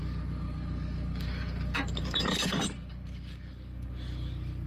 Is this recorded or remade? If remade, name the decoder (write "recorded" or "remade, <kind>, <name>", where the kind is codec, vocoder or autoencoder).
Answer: remade, codec, DAC